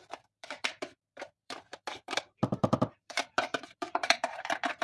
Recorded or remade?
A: remade